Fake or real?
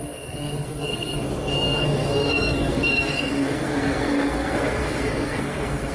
fake